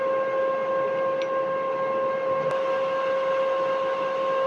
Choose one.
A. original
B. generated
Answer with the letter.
A